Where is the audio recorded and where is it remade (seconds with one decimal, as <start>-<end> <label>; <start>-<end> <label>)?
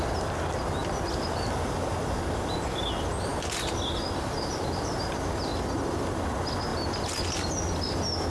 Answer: 0.0-8.3 recorded